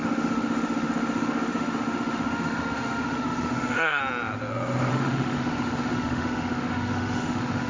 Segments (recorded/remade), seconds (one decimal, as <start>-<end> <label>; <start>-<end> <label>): 0.0-4.0 remade; 4.0-4.9 recorded; 4.9-7.7 remade